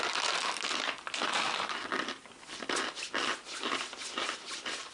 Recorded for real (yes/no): yes